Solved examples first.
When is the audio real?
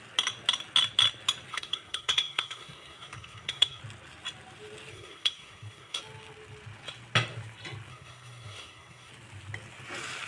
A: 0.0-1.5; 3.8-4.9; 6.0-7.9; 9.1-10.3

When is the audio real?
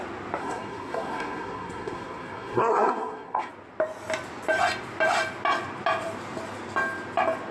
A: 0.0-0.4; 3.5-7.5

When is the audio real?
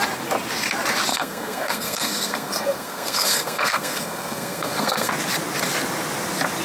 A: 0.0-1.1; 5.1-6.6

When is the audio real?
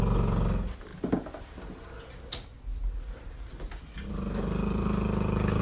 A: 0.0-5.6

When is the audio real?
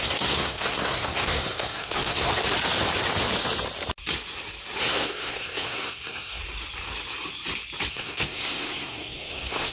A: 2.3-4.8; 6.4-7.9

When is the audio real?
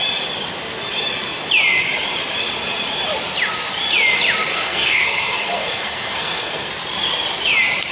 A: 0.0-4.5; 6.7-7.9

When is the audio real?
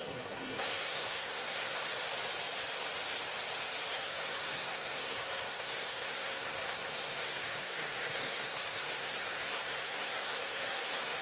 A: 1.9-3.9